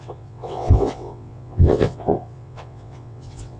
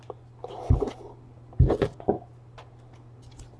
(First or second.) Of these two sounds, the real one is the second